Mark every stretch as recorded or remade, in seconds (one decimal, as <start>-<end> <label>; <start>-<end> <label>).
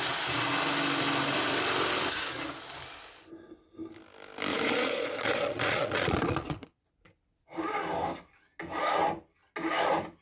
0.0-4.5 recorded; 4.5-6.9 remade; 6.9-10.2 recorded